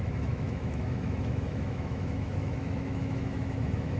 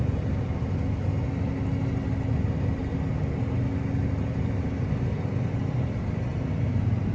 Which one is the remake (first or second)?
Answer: first